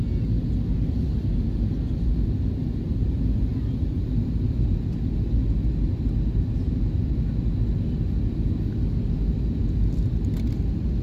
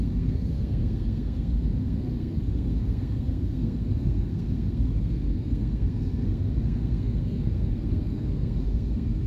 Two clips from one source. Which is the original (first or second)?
first